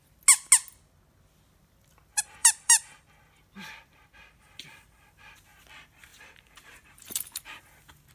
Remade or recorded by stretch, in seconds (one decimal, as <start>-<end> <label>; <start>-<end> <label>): 0.0-2.4 recorded; 2.4-3.1 remade; 3.1-6.1 recorded; 6.1-7.4 remade; 7.4-8.1 recorded

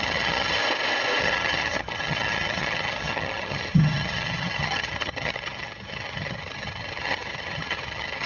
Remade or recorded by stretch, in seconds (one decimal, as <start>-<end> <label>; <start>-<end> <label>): 0.0-0.6 remade; 0.6-1.2 recorded; 1.2-8.3 remade